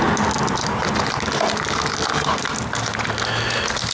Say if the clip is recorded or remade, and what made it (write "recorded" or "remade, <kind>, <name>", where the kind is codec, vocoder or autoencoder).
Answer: recorded